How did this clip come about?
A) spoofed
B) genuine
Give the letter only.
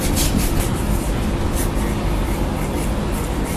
B